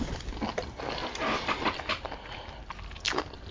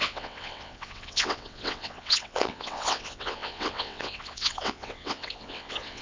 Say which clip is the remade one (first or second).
second